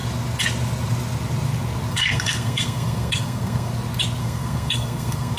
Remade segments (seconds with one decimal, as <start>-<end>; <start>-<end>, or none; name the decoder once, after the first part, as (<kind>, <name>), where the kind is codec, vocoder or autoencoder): 1.9-3.7 (codec, SNAC); 4.2-5.4